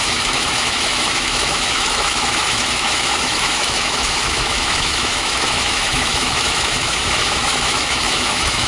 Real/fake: fake